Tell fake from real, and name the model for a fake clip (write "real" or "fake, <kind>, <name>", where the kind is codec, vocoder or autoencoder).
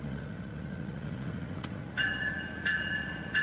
fake, vocoder, Vocos